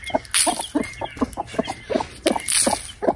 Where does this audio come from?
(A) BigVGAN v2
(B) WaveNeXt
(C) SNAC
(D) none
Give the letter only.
D